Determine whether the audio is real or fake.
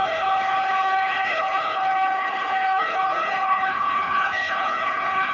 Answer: fake